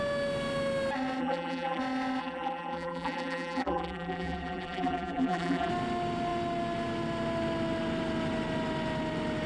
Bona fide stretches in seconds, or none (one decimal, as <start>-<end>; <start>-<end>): 0.0-1.2; 1.8-2.2; 5.7-9.5